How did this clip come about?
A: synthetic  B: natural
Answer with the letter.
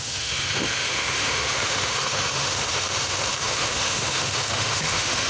A